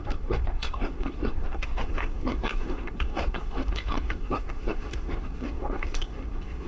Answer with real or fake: fake